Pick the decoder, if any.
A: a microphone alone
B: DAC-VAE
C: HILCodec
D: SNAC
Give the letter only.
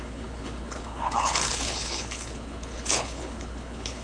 C